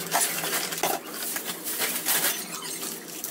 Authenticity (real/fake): real